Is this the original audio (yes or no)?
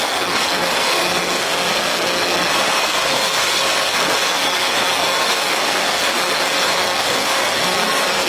no